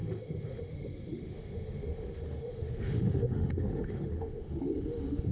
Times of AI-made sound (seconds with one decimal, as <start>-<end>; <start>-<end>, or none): 0.0-5.3